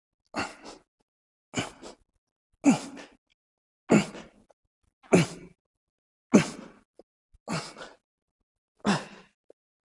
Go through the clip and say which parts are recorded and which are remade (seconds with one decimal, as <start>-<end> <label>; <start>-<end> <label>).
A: 0.0-9.9 recorded